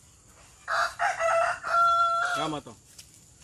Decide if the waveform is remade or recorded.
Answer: recorded